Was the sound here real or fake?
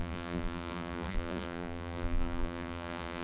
fake